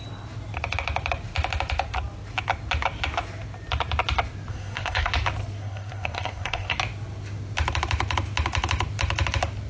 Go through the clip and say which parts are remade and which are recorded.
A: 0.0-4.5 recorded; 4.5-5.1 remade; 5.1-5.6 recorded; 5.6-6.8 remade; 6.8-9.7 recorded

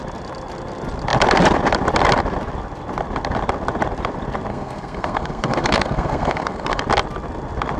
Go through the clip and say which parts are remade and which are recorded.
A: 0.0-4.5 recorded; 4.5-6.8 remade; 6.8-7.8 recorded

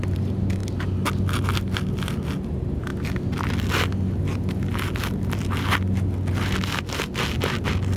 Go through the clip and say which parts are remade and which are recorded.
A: 0.0-8.0 recorded

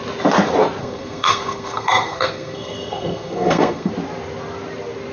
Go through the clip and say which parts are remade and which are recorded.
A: 0.0-0.8 recorded; 0.8-3.9 remade; 3.9-5.1 recorded